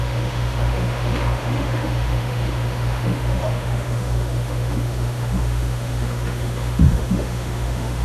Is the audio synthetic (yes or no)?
yes